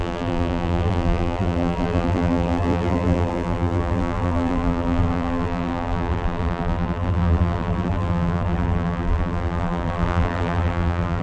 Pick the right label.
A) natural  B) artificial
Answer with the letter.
B